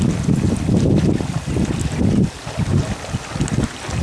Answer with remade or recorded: recorded